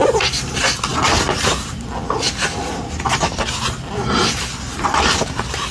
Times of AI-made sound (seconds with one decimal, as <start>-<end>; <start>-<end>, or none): none